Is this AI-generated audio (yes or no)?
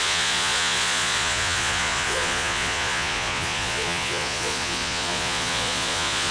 yes